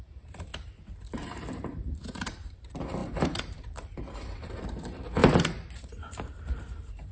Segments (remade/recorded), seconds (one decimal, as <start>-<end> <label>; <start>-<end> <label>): 0.0-0.5 remade; 0.5-1.1 recorded; 1.1-7.1 remade

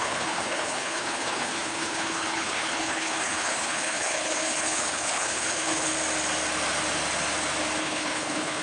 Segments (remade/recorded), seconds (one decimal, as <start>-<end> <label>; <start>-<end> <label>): 0.0-5.9 remade; 5.9-7.8 recorded; 7.8-8.6 remade